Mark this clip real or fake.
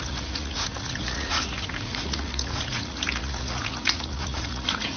fake